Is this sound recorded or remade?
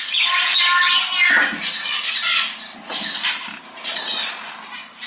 recorded